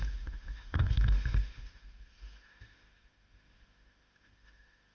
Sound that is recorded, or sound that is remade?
remade